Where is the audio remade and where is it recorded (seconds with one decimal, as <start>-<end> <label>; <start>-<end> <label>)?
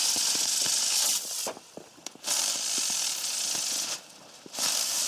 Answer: 0.0-5.1 recorded